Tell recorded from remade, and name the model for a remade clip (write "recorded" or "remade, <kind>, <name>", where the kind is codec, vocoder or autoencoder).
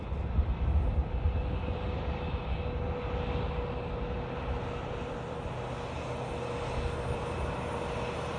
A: recorded